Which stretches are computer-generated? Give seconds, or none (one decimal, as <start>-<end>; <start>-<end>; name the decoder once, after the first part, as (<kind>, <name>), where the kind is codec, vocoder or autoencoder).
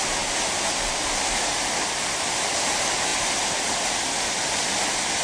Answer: none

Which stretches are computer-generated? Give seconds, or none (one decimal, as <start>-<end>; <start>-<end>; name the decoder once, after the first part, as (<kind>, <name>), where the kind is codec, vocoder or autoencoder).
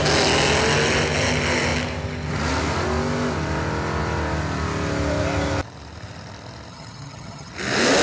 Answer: 6.7-7.5 (vocoder, HiFi-GAN)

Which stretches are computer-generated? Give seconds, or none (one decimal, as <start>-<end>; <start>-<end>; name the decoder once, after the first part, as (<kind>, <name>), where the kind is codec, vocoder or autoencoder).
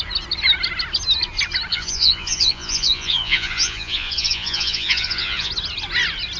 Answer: 1.7-5.5 (vocoder, Vocos)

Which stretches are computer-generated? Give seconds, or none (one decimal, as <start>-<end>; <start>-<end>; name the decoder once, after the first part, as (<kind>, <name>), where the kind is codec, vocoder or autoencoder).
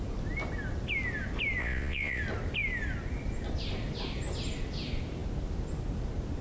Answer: 1.6-2.2 (vocoder, Vocos)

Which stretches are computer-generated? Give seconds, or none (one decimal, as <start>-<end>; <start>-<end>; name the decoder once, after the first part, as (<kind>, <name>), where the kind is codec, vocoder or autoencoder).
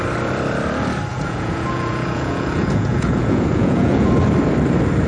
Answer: 1.1-4.1 (vocoder, Vocos)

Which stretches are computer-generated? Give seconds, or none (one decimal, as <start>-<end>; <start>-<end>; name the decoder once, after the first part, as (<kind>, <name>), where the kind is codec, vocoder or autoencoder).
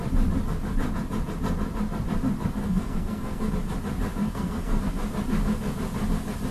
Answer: 2.6-3.5 (codec, SNAC); 4.2-4.8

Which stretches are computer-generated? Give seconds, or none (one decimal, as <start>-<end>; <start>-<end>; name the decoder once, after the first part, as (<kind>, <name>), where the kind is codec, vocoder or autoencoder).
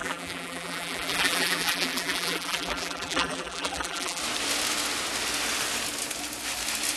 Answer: 0.0-4.2 (vocoder, BigVGAN v2)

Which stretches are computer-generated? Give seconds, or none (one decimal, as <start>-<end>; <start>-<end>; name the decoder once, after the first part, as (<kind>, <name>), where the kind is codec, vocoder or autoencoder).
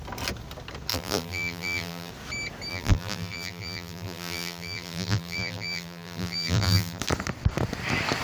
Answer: 0.9-2.1 (vocoder, BigVGAN v2); 2.7-7.0